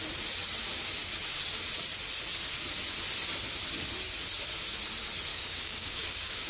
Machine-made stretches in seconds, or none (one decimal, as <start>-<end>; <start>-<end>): 5.3-6.5